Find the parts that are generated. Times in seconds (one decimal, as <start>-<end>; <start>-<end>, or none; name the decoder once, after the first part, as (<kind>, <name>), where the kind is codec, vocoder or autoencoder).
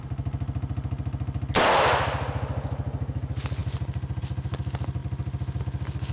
none